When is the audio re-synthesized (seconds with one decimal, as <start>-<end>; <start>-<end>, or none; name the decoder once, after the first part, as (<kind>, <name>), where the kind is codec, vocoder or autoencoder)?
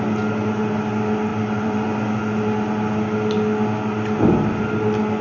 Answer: 1.3-1.9 (vocoder, BigVGAN v2)